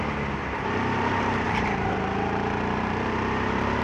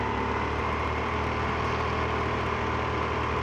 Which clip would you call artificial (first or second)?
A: first